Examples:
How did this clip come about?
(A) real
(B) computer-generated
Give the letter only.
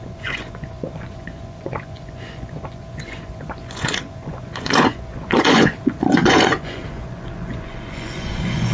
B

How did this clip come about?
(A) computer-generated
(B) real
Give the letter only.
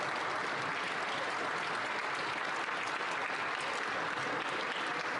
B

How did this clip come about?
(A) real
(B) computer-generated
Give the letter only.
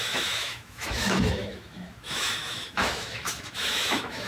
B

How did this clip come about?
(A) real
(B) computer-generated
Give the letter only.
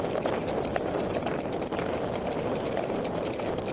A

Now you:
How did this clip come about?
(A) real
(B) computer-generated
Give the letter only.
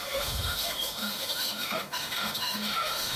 B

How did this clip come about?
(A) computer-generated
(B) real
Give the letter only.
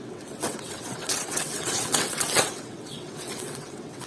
A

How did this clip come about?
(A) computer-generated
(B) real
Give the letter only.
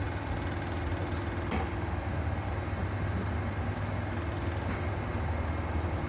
B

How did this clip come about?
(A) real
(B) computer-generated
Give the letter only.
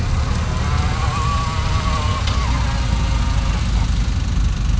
A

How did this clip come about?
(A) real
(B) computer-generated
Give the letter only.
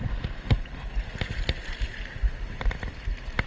A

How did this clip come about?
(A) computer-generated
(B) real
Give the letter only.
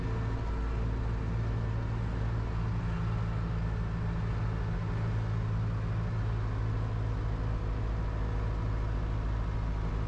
B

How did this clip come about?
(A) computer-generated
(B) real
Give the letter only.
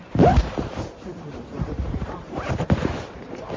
A